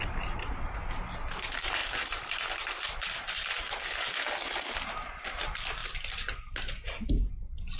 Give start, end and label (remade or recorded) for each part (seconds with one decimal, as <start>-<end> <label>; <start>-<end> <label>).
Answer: 0.0-1.8 recorded; 1.8-3.2 remade; 3.2-7.8 recorded